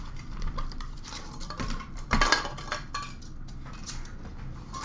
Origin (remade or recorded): remade